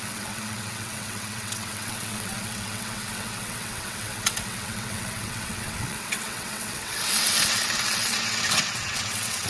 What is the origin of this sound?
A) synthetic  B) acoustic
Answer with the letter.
A